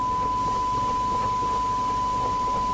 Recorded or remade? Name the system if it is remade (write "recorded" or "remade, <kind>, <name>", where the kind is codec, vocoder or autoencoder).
recorded